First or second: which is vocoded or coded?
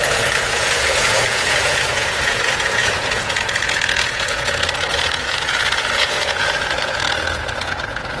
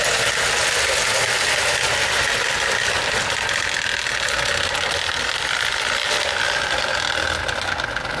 first